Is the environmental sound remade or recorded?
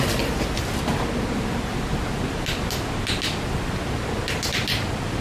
recorded